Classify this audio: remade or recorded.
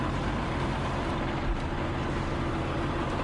remade